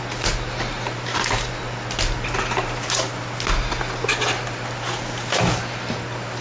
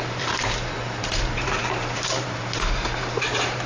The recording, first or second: first